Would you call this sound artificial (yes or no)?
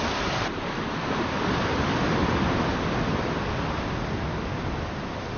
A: no